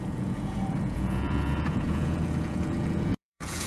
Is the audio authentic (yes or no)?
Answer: no